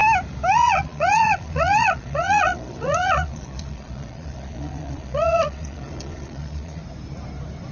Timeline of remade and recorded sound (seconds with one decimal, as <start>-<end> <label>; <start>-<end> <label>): 0.0-0.5 recorded; 0.5-6.8 remade; 6.8-7.7 recorded